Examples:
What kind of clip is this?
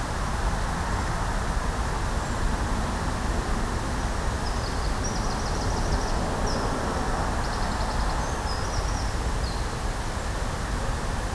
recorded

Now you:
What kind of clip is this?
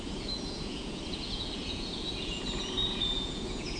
remade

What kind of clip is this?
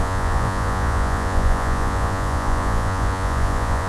remade